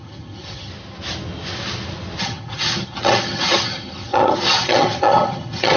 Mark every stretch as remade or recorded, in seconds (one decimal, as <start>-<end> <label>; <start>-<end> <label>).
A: 0.0-0.7 remade; 0.7-2.2 recorded; 2.2-5.8 remade